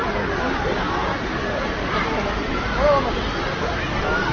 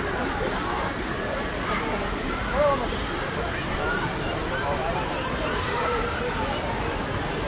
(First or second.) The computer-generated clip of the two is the second